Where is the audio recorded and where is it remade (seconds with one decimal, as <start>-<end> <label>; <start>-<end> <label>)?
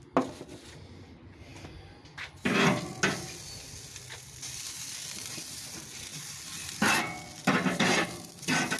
0.0-8.8 recorded